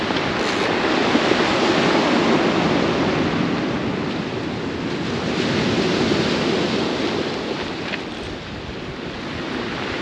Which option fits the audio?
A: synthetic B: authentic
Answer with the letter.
B